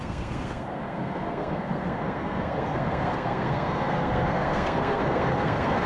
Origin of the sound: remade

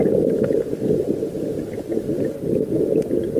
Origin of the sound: recorded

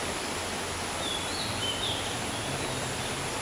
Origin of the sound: recorded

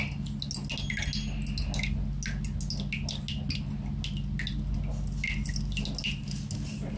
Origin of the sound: recorded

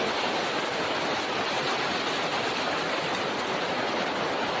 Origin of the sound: recorded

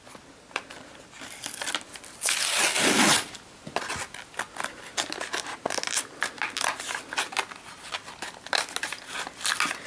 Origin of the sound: recorded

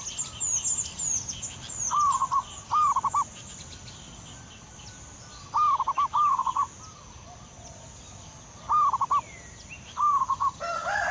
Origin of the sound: recorded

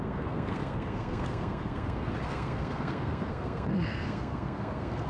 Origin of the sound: remade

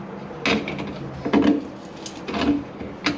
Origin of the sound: recorded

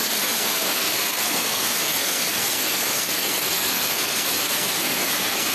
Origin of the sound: remade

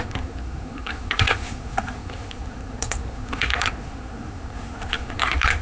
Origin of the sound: remade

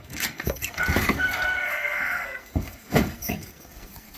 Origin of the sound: remade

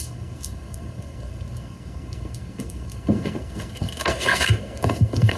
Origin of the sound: remade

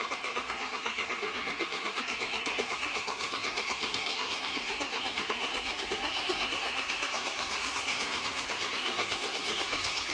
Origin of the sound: remade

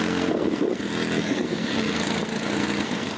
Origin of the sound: remade